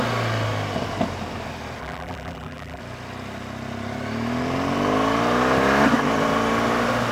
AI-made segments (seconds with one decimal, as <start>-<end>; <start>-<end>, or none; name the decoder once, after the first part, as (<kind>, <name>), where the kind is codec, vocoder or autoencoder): 1.8-2.8 (vocoder, BigVGAN v2)